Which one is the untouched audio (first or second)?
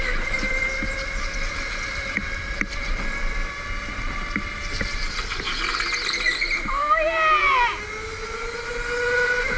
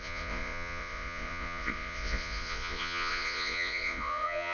first